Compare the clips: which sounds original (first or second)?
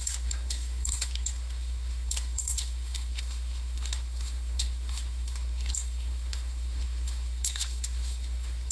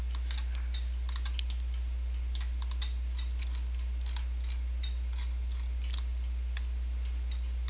second